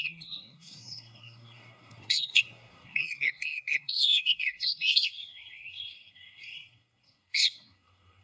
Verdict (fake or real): fake